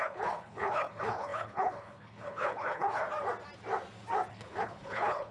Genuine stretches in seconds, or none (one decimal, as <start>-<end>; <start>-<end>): 3.0-4.3